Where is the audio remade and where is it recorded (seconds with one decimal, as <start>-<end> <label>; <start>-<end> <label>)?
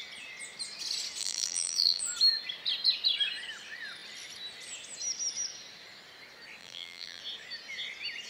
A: 0.0-1.2 recorded; 1.2-2.0 remade; 2.0-6.6 recorded; 6.6-7.2 remade; 7.2-8.3 recorded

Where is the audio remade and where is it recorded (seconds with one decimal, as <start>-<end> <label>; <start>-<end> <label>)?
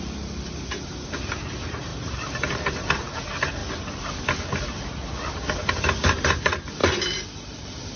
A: 0.0-3.6 remade; 3.6-5.7 recorded; 5.7-8.0 remade